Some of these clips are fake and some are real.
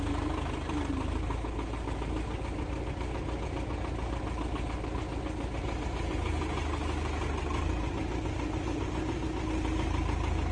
real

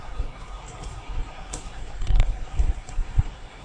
fake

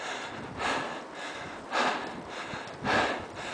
real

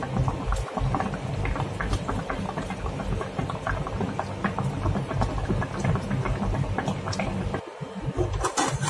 real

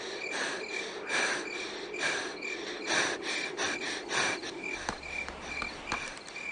real